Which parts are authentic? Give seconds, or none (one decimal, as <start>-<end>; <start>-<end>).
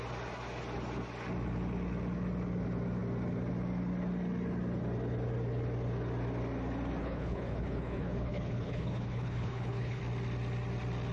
0.0-7.0; 10.0-11.1